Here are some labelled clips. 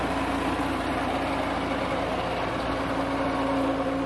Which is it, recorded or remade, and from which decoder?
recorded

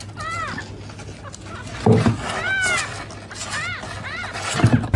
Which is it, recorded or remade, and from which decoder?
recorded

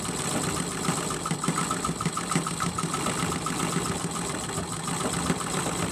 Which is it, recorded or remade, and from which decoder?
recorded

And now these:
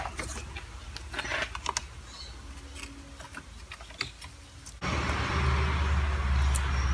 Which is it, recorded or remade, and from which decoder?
recorded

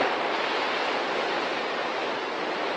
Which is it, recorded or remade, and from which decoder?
recorded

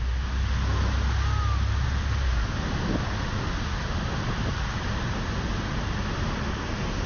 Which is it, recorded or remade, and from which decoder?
recorded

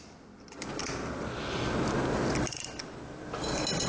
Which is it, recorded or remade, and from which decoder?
recorded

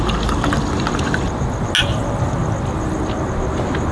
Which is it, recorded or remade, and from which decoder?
recorded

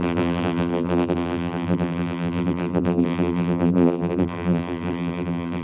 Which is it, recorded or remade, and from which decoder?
remade, vocoder, BigVGAN v2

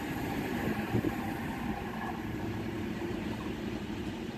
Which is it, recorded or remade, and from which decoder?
remade, vocoder, BigVGAN v2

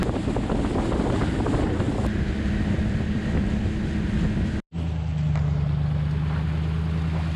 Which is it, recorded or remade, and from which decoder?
recorded